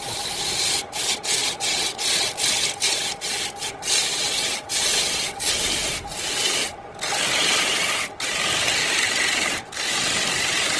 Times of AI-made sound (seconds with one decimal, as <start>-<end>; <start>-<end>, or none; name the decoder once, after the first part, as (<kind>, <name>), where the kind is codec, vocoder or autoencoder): 1.4-2.0 (vocoder, WaveNeXt); 4.1-5.5